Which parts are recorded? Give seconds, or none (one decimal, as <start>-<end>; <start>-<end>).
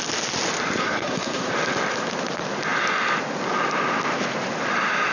0.0-0.8; 1.5-5.1